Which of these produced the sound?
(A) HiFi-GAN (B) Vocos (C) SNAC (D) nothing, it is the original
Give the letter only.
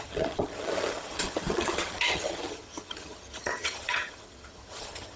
A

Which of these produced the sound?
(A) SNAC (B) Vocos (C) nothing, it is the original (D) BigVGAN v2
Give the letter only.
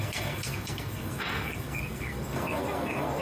A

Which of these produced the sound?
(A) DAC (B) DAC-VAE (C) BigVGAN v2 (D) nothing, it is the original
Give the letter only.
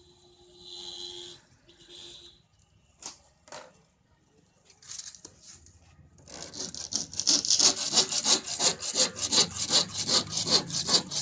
D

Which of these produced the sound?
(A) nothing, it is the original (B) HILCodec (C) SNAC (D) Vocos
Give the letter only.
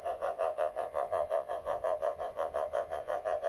D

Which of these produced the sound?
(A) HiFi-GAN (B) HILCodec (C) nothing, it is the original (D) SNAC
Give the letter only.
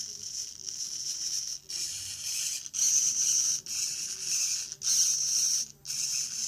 C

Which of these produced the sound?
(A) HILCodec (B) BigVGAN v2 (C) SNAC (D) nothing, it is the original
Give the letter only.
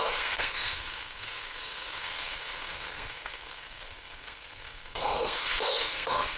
C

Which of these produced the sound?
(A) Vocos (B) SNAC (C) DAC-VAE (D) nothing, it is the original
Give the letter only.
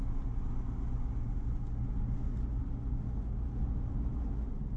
D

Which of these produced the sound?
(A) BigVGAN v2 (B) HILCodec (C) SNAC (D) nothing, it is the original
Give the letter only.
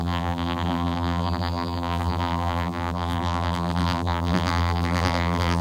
A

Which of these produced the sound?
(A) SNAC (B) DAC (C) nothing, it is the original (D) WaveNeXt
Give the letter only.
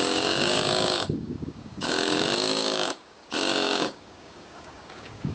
B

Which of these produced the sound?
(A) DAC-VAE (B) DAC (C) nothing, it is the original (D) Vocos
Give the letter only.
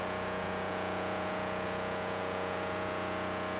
D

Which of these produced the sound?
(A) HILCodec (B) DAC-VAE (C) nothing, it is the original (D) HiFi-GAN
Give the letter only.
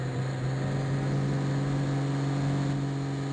C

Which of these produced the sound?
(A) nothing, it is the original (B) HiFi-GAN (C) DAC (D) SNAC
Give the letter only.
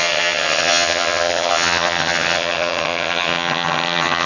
B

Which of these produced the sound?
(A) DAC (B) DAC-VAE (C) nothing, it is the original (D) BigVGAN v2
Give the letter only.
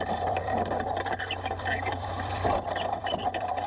D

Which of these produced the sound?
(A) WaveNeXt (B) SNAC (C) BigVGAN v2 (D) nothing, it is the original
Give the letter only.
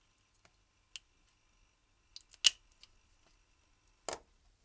D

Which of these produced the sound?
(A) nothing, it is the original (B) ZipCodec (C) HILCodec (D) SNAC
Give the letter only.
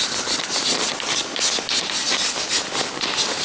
A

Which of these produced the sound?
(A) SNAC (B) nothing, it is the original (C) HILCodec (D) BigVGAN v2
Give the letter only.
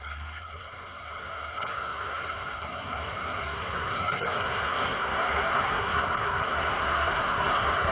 A